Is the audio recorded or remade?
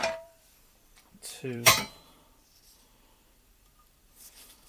remade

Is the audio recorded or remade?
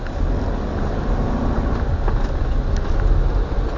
recorded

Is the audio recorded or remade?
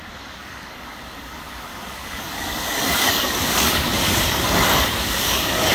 remade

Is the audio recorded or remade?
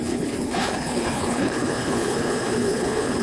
remade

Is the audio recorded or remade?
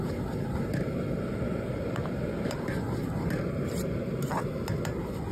recorded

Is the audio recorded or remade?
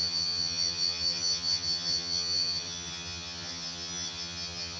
remade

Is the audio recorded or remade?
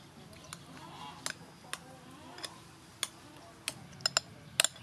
recorded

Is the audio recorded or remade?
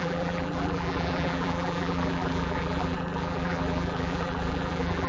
remade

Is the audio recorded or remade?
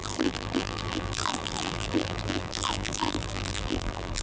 remade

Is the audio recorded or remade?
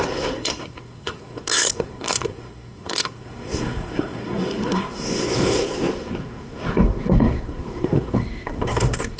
remade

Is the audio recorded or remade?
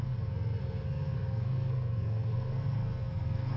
remade